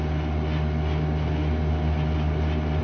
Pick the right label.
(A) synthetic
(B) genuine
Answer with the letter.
B